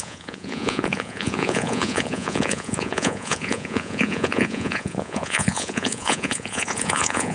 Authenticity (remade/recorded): remade